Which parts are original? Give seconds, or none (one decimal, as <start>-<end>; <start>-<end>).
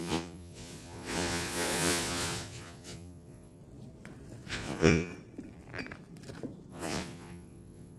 3.6-4.5; 5.1-6.7